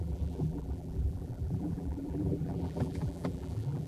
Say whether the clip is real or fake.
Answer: fake